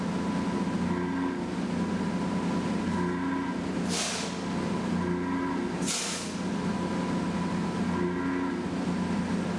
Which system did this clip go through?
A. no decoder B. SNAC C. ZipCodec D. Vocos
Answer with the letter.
A